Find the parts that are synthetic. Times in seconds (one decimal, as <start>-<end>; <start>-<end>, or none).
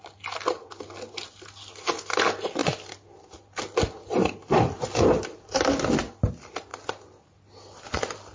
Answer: none